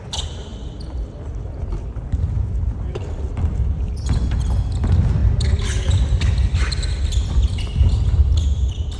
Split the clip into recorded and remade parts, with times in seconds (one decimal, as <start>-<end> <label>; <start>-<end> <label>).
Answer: 0.0-0.5 recorded; 0.5-4.4 remade; 4.4-9.0 recorded